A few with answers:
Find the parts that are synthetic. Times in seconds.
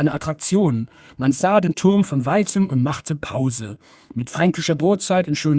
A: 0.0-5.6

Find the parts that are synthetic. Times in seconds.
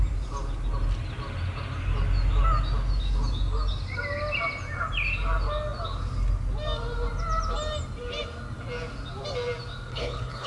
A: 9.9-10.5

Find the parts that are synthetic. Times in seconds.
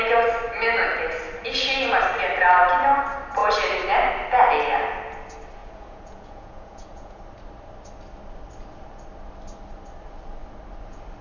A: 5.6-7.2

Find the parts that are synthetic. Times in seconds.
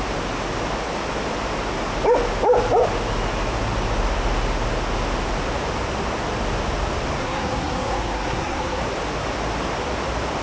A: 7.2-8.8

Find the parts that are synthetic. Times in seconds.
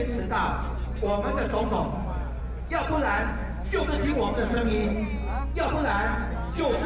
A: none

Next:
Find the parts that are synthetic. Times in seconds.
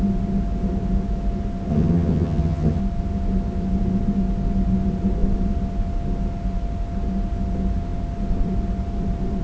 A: 1.7-2.8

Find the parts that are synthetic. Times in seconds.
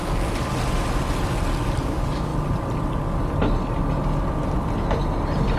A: 1.8-2.3